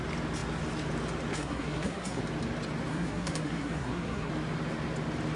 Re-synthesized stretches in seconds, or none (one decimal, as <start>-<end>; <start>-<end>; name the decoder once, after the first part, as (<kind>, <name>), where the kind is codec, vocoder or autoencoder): 1.3-2.2 (codec, SNAC); 2.9-4.3

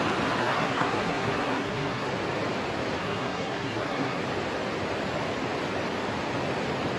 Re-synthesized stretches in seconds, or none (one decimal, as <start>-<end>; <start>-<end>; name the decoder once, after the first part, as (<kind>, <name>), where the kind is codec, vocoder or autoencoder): 0.4-2.1 (codec, SNAC); 3.0-4.2